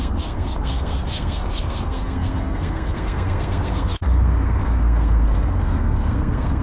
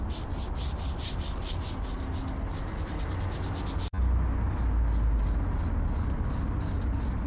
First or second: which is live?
second